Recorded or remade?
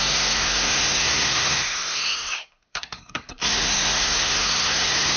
remade